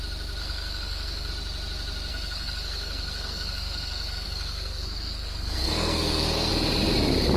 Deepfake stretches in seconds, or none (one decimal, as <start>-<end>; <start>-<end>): 0.4-1.3; 2.1-6.5